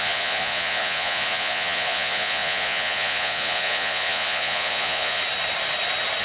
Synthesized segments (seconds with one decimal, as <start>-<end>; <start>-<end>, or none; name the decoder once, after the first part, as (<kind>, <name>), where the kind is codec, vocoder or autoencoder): 0.0-5.2 (vocoder, Vocos)